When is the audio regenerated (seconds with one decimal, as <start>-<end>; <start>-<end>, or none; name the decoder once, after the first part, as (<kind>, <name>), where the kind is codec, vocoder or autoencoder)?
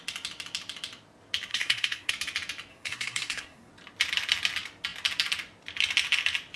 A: 1.5-2.1 (codec, SNAC); 2.7-3.7